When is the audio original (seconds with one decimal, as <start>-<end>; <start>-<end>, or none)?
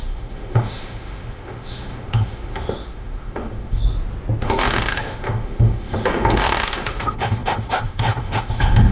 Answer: 3.8-4.4